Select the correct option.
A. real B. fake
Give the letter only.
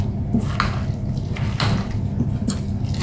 A